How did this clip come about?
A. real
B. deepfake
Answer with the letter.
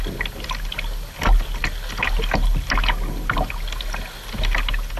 A